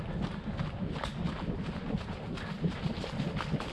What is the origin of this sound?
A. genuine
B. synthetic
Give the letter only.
A